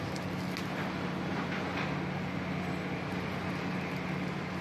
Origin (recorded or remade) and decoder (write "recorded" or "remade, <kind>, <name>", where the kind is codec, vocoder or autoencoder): recorded